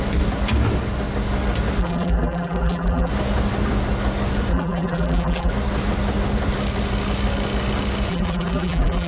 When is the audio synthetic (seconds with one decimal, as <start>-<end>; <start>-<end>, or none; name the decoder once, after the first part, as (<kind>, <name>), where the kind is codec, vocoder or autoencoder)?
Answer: 1.8-3.1 (vocoder, BigVGAN v2); 4.5-5.5; 8.1-9.1